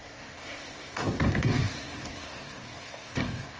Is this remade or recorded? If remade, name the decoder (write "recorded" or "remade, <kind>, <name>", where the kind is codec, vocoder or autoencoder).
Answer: remade, codec, SNAC